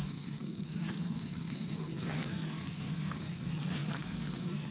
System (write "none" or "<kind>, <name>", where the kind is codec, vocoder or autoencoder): codec, SNAC